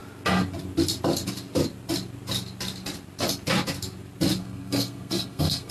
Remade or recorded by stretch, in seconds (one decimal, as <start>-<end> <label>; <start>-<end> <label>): 0.0-4.4 recorded; 4.4-5.7 remade